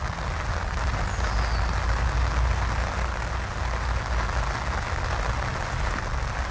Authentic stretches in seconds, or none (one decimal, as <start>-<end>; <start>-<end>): 0.0-6.5